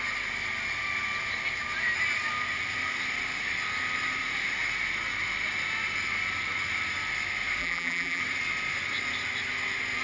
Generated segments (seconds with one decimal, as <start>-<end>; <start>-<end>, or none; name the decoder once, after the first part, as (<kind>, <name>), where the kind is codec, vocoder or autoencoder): 7.6-8.2 (vocoder, BigVGAN v2)